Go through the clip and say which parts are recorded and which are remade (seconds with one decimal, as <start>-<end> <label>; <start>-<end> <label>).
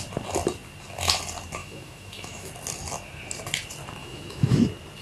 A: 0.0-1.6 recorded; 1.6-2.5 remade; 2.5-4.0 recorded; 4.0-4.6 remade; 4.6-5.0 recorded